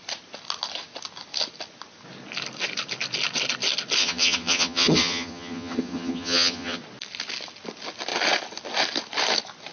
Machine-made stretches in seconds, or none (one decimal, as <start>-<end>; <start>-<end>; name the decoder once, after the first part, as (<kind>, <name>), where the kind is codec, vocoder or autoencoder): 4.0-6.8 (vocoder, HiFi-GAN)